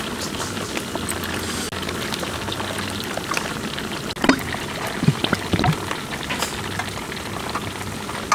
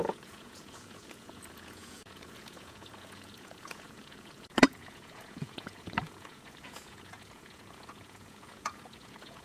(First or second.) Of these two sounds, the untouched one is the first